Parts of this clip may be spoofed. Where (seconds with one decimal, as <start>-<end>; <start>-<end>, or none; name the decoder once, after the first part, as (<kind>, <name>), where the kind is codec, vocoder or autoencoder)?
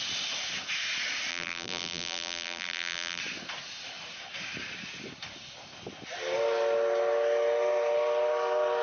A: 1.3-3.2 (vocoder, BigVGAN v2)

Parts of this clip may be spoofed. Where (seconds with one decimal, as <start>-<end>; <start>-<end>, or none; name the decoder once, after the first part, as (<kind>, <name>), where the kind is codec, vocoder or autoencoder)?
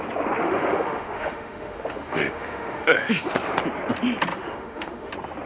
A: 0.4-3.3 (autoencoder, DAC-VAE); 4.3-5.1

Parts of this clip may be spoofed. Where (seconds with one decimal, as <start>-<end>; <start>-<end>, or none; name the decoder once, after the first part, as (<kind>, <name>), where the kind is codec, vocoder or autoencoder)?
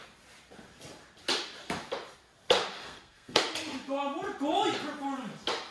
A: 2.8-3.4 (codec, SNAC)